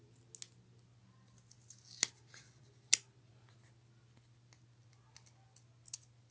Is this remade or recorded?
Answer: recorded